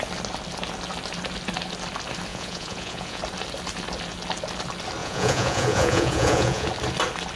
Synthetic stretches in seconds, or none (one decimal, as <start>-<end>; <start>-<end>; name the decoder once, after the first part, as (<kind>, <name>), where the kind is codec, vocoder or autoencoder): 2.3-3.2 (vocoder, Vocos); 5.0-6.7